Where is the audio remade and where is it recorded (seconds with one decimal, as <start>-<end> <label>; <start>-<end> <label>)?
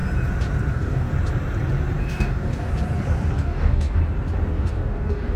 0.0-0.7 recorded; 0.7-1.1 remade; 1.1-2.0 recorded; 2.0-2.7 remade; 2.7-3.3 recorded; 3.3-4.0 remade; 4.0-4.5 recorded; 4.5-5.4 remade